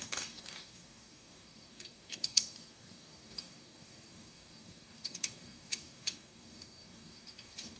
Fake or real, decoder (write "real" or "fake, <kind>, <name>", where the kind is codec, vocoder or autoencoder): fake, codec, DAC